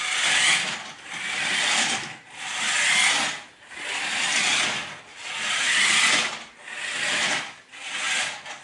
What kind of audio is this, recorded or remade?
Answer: recorded